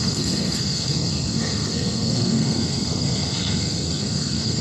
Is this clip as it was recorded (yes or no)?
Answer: no